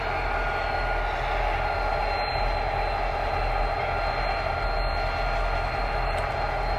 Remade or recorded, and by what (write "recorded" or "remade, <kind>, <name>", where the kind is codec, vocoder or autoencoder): recorded